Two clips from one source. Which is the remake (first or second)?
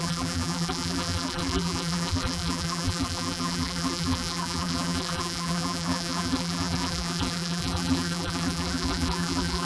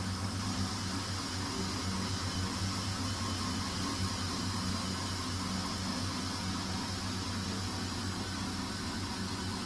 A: first